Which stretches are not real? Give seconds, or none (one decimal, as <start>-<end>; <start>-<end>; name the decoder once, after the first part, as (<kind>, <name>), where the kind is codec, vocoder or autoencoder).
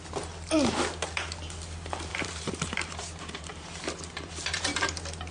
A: 2.1-4.8 (vocoder, BigVGAN v2)